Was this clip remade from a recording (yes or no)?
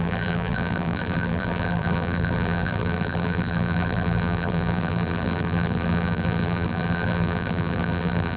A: yes